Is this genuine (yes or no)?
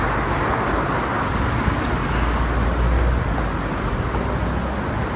yes